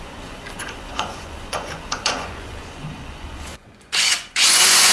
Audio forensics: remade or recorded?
remade